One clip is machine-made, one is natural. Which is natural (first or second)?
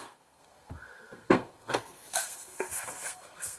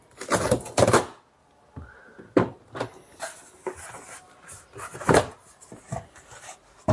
second